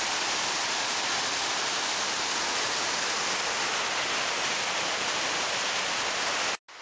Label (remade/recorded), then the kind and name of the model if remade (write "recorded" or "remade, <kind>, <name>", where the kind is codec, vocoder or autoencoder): recorded